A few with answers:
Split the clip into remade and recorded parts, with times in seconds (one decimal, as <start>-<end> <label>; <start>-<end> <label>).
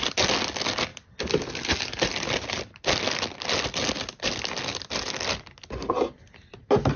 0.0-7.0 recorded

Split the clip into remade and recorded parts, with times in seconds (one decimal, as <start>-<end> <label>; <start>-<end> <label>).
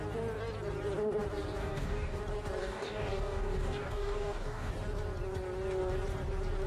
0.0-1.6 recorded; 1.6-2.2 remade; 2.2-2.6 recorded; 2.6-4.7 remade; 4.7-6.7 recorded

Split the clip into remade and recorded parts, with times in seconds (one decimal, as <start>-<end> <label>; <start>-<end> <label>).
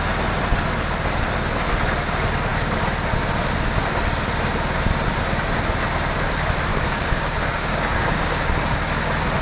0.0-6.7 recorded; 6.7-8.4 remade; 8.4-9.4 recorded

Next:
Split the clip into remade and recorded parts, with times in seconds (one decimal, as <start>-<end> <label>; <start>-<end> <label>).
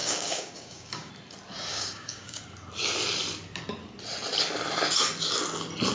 0.0-1.1 remade; 1.1-1.7 recorded; 1.7-2.4 remade; 2.4-5.9 recorded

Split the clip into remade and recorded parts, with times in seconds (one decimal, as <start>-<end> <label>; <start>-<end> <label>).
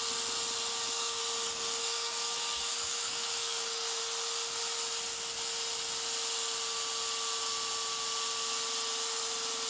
0.0-0.7 recorded; 0.7-1.2 remade; 1.2-1.8 recorded; 1.8-4.0 remade; 4.0-9.7 recorded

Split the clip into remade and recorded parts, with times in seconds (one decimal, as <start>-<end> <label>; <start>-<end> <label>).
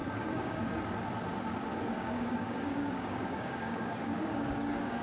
0.0-0.7 remade; 0.7-1.7 recorded; 1.7-5.0 remade